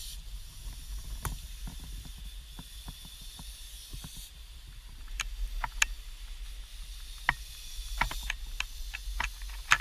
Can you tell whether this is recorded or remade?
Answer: recorded